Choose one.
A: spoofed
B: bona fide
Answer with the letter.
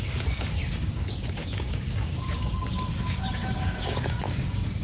A